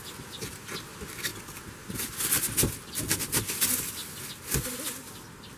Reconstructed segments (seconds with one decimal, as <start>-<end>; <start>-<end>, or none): none